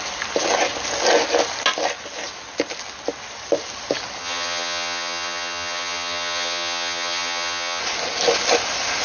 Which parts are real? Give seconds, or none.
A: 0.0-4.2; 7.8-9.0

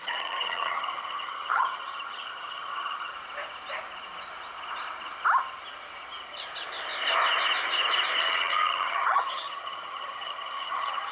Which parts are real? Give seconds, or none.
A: 3.1-8.2

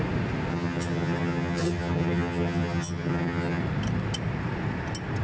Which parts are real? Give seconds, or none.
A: 0.0-0.5; 3.6-5.2

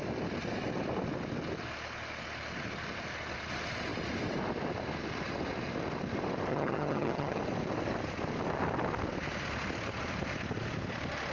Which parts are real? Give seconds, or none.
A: 0.0-6.5; 7.4-11.3

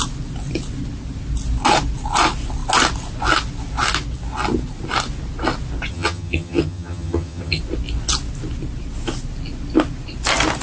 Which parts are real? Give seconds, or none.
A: 0.0-5.9; 7.6-10.6